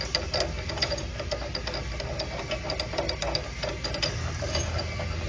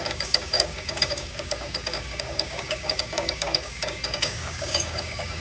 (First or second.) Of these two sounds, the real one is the first